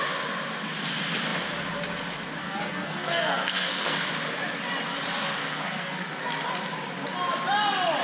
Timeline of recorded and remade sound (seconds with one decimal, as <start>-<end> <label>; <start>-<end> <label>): 0.0-2.4 recorded; 2.4-4.1 remade; 4.1-5.4 recorded; 5.4-6.2 remade; 6.2-8.0 recorded